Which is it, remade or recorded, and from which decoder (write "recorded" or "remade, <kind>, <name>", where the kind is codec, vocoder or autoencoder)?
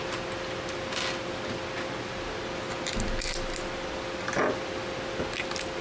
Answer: recorded